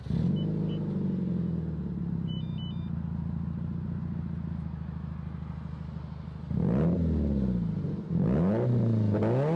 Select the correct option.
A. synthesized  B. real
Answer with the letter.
B